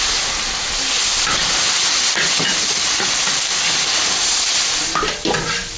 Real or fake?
real